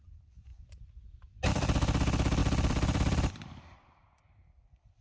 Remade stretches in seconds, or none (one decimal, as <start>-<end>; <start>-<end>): 2.4-4.2